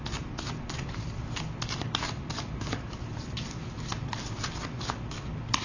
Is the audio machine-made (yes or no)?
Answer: no